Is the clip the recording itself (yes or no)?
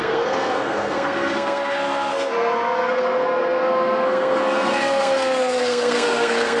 no